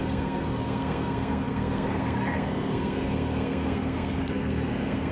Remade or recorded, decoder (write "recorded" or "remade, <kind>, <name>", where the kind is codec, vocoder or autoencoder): remade, codec, SNAC